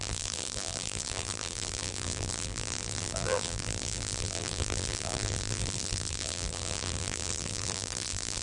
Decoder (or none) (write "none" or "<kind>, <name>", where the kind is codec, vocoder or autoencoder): vocoder, BigVGAN v2